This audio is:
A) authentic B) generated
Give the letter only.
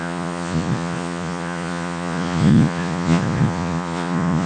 B